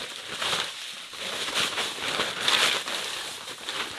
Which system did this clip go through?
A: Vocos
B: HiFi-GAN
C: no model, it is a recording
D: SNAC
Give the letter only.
C